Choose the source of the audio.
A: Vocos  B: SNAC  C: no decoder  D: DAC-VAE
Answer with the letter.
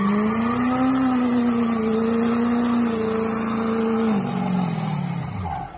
C